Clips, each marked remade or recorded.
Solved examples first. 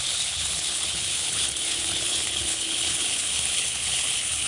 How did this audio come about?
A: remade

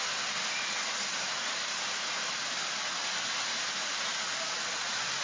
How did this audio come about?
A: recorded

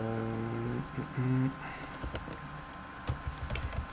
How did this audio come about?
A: recorded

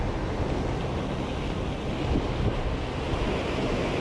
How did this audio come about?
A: recorded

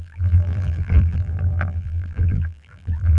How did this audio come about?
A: remade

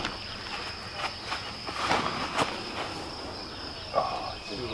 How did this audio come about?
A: recorded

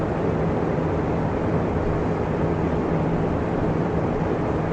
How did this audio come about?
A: recorded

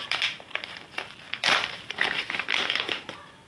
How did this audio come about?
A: remade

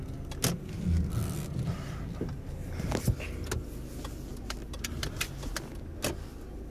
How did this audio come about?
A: recorded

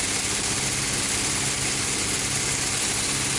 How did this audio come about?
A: recorded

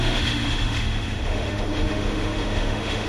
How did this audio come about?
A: remade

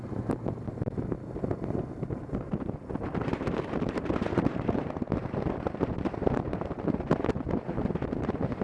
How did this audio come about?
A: remade